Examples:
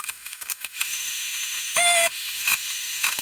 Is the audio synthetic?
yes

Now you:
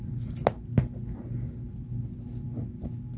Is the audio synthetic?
no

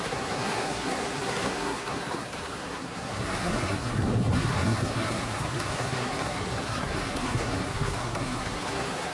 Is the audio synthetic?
yes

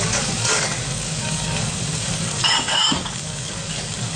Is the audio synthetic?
yes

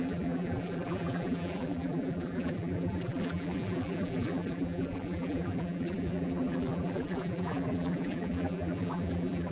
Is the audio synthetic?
yes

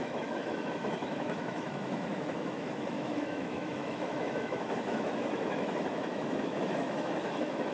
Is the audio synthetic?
yes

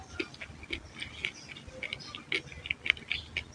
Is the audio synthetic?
no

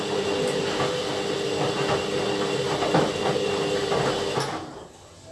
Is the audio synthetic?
no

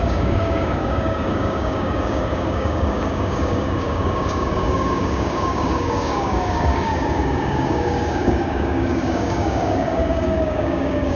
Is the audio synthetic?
yes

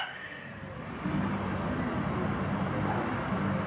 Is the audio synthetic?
no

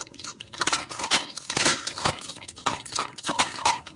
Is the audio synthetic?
yes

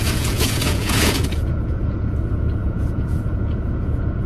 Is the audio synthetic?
yes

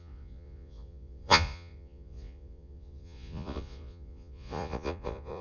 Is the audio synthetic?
yes